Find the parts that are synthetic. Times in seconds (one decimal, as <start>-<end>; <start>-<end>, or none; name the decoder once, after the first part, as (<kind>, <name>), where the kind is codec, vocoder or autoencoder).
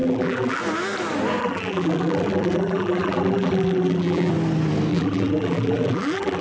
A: 0.0-0.6 (vocoder, BigVGAN v2); 1.4-4.3; 4.9-6.4